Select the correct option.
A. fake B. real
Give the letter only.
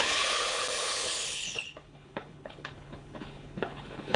A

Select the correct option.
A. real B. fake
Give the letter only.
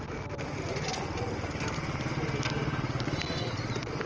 A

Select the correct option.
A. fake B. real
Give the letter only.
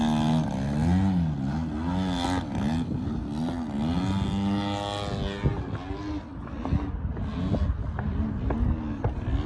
B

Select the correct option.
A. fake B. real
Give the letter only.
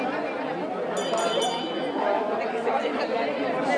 B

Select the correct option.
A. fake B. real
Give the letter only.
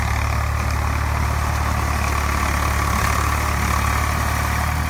B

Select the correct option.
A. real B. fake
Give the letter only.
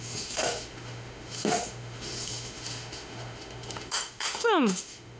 B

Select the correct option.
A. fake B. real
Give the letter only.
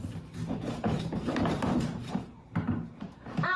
A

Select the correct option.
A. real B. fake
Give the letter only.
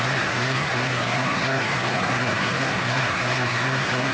B